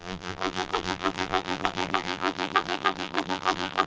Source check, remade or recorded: remade